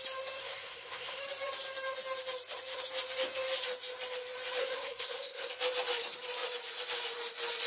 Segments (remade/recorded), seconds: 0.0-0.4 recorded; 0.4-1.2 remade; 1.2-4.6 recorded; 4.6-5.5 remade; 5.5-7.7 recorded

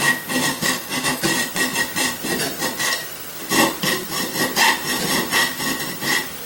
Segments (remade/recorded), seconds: 0.0-0.5 recorded; 0.5-1.2 remade; 1.2-6.5 recorded

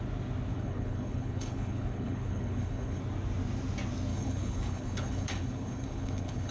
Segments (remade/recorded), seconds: 0.0-0.5 recorded; 0.5-3.0 remade; 3.0-4.1 recorded; 4.1-6.5 remade

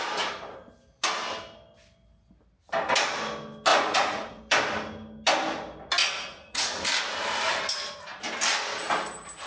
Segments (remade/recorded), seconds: 0.0-3.7 recorded; 3.7-4.4 remade; 4.4-6.0 recorded; 6.0-6.8 remade; 6.8-9.5 recorded